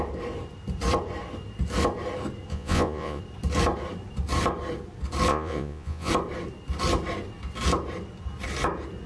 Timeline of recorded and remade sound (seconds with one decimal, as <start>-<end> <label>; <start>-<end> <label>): 0.0-2.5 recorded; 2.5-3.2 remade; 3.2-5.3 recorded; 5.3-6.1 remade; 6.1-9.1 recorded